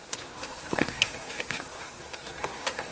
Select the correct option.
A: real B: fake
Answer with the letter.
B